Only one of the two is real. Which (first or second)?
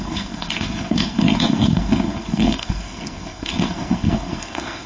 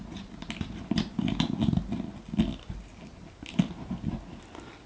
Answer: second